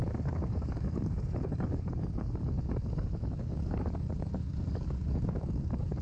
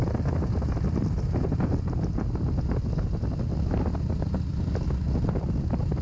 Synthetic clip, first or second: first